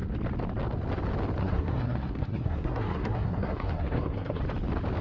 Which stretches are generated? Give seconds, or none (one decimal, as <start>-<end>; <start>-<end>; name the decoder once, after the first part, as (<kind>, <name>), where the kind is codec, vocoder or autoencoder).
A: 1.4-4.4 (codec, SNAC)